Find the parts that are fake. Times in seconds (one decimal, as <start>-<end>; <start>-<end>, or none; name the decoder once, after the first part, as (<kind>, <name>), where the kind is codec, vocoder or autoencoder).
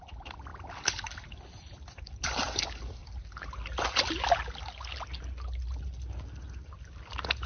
0.0-0.5 (vocoder, BigVGAN v2); 2.1-3.0